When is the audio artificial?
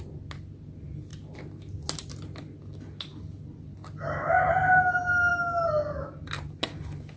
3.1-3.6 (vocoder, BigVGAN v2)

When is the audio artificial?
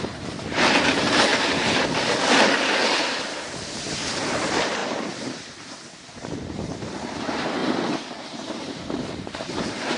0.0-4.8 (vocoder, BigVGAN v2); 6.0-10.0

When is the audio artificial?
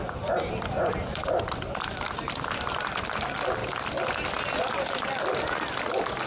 0.0-2.4 (vocoder, BigVGAN v2); 3.6-6.3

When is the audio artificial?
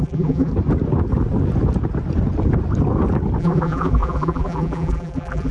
0.0-0.5 (vocoder, BigVGAN v2); 3.4-5.5